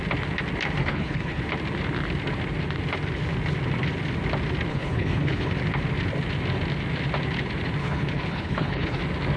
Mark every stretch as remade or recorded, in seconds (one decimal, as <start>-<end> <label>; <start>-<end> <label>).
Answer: 0.0-0.8 recorded; 0.8-1.4 remade; 1.4-4.7 recorded; 4.7-5.5 remade; 5.5-7.8 recorded; 7.8-9.0 remade; 9.0-9.4 recorded